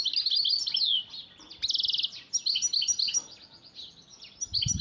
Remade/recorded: recorded